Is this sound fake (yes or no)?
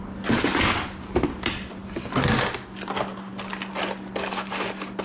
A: no